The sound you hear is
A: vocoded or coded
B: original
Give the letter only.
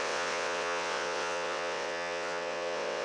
A